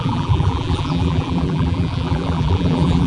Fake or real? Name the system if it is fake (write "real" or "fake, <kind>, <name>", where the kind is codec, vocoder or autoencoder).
fake, vocoder, BigVGAN v2